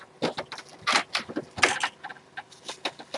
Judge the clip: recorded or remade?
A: recorded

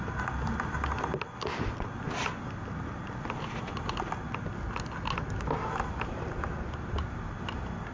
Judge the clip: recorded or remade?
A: recorded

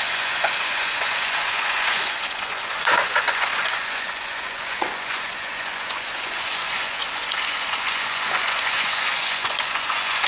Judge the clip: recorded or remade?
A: remade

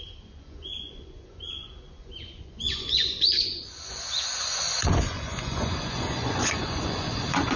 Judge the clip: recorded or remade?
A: remade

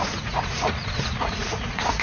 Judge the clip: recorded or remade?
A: remade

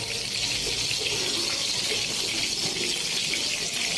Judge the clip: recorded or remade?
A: recorded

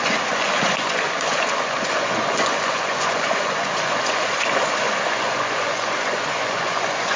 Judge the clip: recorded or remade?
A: remade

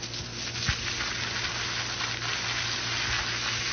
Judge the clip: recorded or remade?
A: recorded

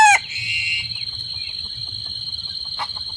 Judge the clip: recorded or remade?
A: recorded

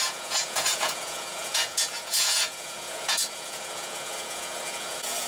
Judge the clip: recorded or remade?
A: remade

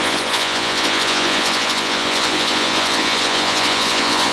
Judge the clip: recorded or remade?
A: remade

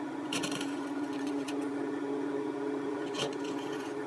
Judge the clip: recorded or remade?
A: remade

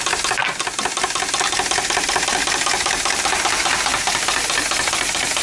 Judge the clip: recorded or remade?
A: recorded